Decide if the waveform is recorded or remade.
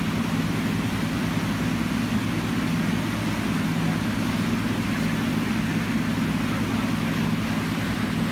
recorded